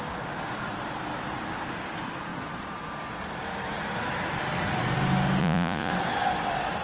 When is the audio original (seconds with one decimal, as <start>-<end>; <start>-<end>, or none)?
0.0-5.4; 5.9-6.8